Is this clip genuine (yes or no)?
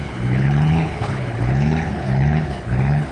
no